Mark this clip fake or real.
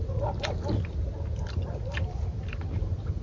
real